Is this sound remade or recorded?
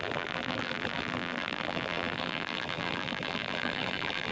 remade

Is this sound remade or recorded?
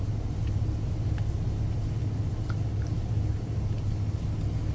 recorded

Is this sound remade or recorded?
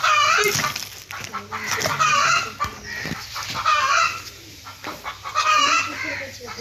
recorded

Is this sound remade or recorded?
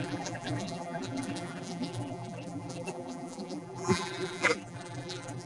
remade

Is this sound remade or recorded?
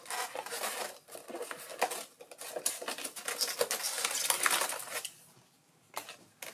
recorded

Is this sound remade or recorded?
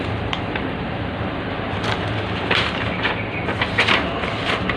remade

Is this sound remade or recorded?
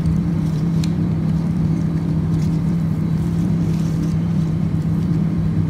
remade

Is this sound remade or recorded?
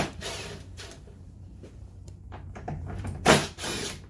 remade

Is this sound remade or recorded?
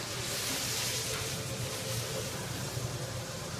remade